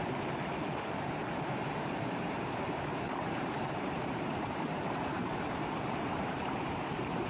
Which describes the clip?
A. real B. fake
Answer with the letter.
B